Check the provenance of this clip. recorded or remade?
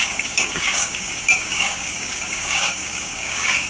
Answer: remade